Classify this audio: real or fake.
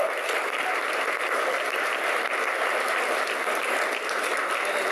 real